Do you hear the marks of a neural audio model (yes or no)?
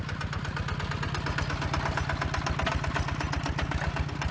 no